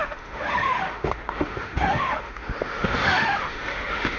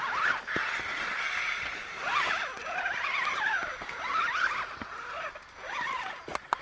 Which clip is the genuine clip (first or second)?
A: second